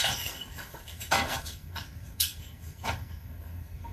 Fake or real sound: fake